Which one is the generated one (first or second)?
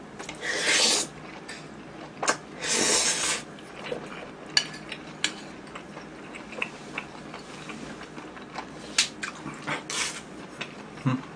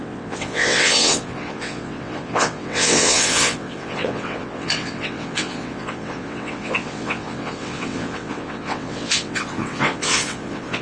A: second